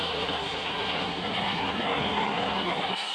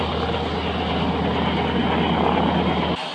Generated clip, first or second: first